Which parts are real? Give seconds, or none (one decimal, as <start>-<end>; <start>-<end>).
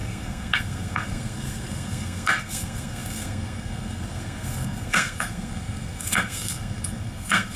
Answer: none